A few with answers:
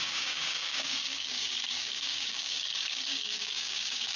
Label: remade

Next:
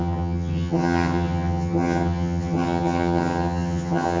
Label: remade